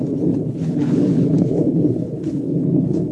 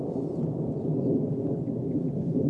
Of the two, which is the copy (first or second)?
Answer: first